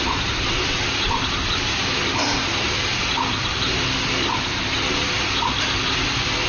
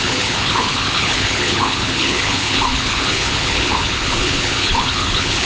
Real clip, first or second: first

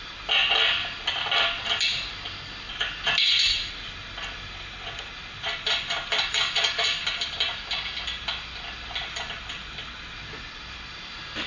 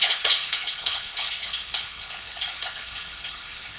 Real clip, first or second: first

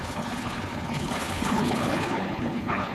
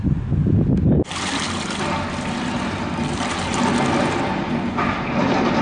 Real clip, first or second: second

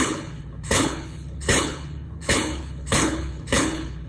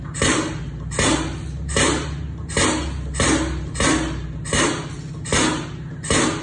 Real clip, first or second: second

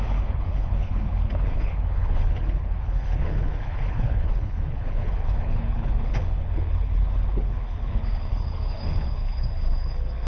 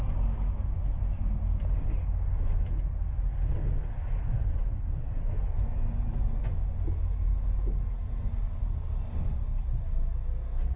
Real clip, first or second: second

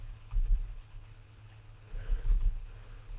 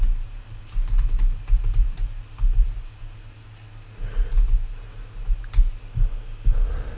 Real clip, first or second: second